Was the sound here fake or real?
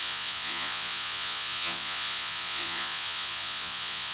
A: fake